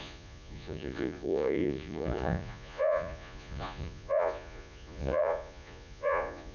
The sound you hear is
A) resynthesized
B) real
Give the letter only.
A